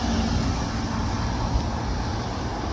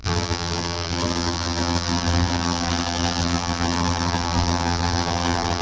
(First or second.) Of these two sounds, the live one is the first